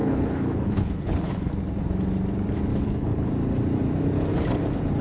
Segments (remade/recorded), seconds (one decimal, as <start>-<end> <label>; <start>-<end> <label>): 0.0-1.5 remade; 1.5-2.7 recorded; 2.7-3.3 remade; 3.3-5.0 recorded